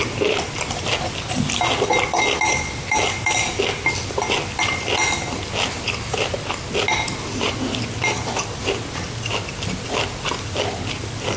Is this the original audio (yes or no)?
yes